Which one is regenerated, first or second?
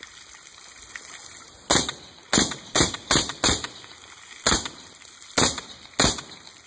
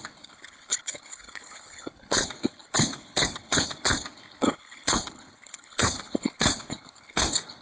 second